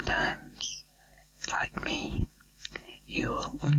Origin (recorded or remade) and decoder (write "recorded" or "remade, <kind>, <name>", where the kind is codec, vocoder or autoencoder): remade, codec, SNAC